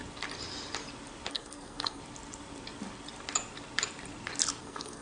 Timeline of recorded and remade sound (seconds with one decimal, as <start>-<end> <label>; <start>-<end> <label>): 0.0-1.3 recorded; 1.3-2.0 remade; 2.0-4.6 recorded; 4.6-5.0 remade